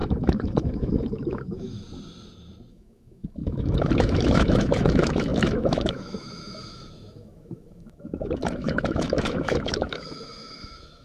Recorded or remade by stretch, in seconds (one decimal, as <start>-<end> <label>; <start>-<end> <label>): 0.0-1.8 remade; 1.8-2.7 recorded; 2.7-11.0 remade

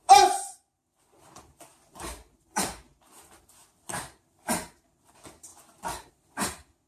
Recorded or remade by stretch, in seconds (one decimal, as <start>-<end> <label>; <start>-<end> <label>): 0.0-1.7 recorded; 1.7-3.0 remade; 3.0-5.5 recorded; 5.5-6.1 remade; 6.1-6.9 recorded

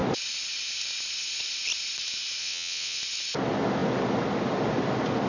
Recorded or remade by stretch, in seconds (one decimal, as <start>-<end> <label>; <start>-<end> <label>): 0.0-2.4 recorded; 2.4-3.0 remade; 3.0-5.3 recorded

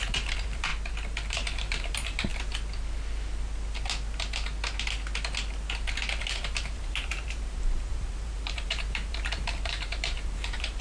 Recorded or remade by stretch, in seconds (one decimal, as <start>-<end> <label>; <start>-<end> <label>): 0.0-0.7 remade; 0.7-1.3 recorded; 1.3-2.3 remade; 2.3-6.2 recorded; 6.2-10.8 remade

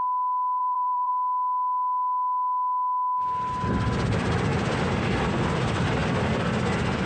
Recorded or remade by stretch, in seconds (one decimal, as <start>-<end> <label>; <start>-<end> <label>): 0.0-0.6 recorded; 0.6-1.1 remade; 1.1-7.1 recorded

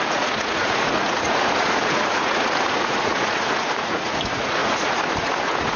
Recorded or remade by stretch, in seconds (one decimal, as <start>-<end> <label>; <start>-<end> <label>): 0.0-5.8 remade